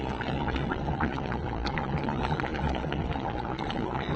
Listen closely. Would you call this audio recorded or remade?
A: remade